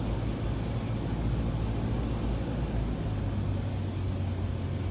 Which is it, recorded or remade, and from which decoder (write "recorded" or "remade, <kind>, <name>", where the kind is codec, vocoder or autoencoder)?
recorded